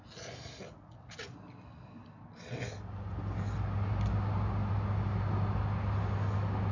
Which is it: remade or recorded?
recorded